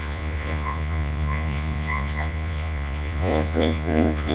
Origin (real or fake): fake